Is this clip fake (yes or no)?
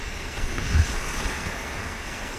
yes